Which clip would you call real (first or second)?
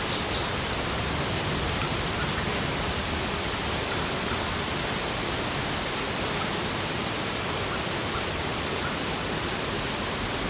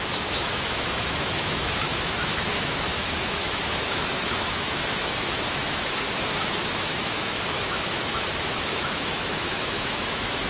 first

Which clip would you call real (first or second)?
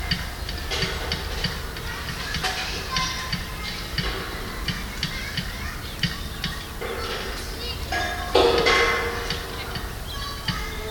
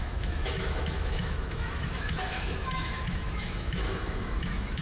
first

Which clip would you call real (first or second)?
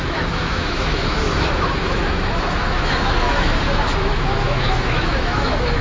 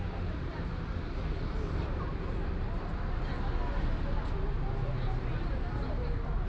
second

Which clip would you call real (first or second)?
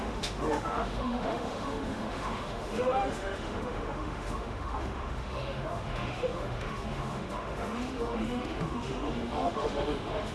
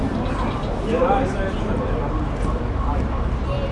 second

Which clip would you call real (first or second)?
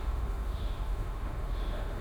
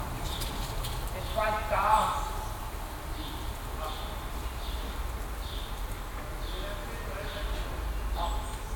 second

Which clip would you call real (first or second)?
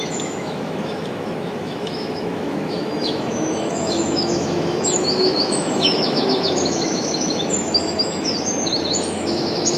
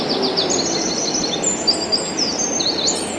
second